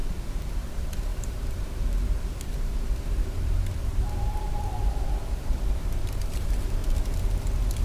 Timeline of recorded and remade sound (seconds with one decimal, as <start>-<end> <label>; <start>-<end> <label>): 0.0-0.7 recorded; 0.7-6.8 remade; 6.8-7.8 recorded